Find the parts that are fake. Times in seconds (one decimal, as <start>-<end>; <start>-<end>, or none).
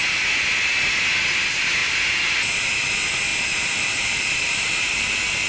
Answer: 1.8-2.4; 3.3-5.0